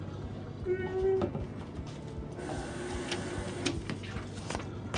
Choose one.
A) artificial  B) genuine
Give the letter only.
B